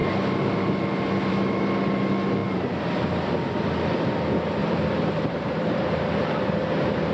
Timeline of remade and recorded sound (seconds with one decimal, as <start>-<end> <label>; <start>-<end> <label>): 0.0-4.6 recorded; 4.6-6.2 remade; 6.2-7.1 recorded